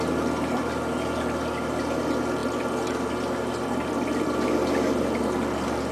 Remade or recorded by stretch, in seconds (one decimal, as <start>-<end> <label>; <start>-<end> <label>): 0.0-5.9 recorded